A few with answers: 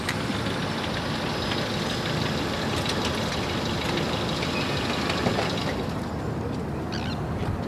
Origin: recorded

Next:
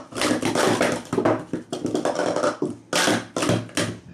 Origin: recorded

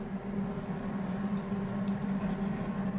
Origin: recorded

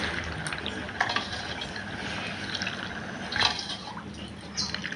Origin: recorded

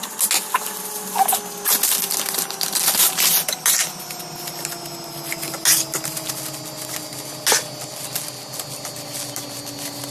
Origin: recorded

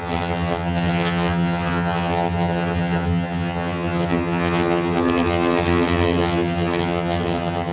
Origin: remade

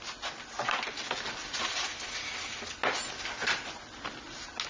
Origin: recorded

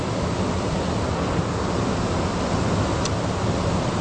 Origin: recorded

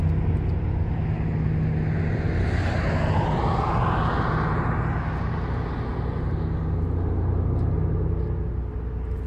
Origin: recorded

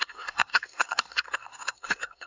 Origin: remade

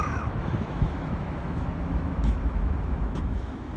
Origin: remade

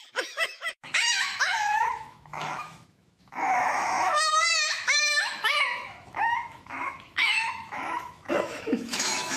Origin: remade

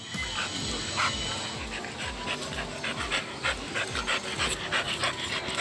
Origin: recorded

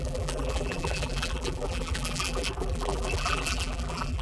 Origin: remade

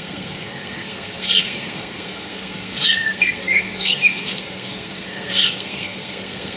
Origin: remade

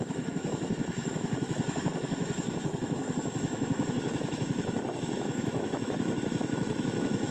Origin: remade